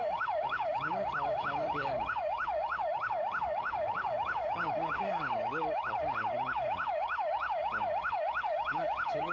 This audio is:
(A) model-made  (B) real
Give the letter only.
A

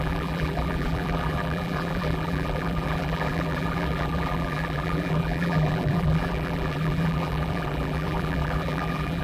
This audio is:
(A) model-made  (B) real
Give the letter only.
A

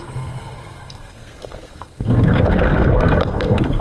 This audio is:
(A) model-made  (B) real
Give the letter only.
A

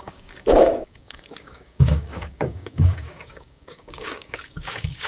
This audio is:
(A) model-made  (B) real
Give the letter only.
A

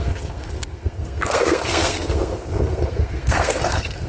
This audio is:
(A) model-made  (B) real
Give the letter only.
A